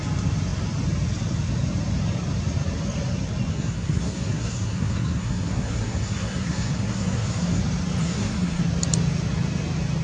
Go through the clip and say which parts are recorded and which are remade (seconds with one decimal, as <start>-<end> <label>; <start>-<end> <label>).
0.0-3.5 recorded; 3.5-7.6 remade; 7.6-8.0 recorded; 8.0-8.6 remade; 8.6-10.0 recorded